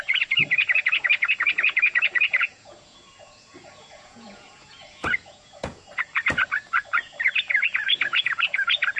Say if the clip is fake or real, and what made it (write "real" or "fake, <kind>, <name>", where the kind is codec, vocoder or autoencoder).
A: fake, vocoder, Vocos